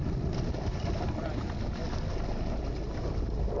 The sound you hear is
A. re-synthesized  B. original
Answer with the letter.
B